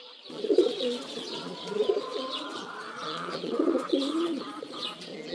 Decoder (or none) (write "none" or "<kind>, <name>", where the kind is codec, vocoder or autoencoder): vocoder, Vocos